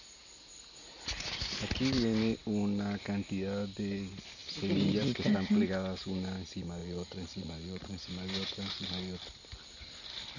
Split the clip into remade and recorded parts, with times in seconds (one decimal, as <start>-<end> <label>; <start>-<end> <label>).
0.0-0.8 recorded; 0.8-1.3 remade; 1.3-6.8 recorded; 6.8-8.1 remade; 8.1-10.4 recorded